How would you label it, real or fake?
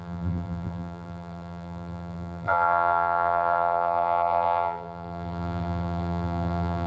fake